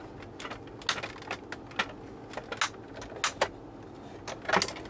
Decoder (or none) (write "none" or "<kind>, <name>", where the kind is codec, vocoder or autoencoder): none